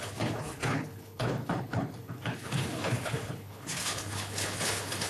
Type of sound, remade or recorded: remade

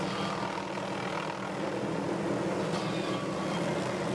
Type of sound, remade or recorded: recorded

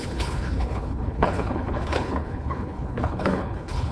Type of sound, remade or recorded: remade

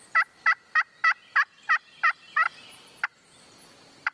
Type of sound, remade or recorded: recorded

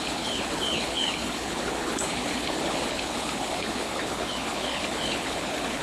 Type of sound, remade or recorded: remade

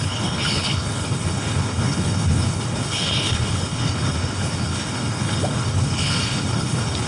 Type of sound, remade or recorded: remade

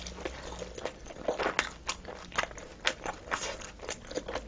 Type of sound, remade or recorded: recorded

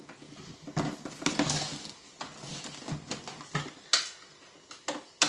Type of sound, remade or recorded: recorded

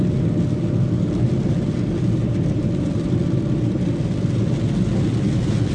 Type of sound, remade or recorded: recorded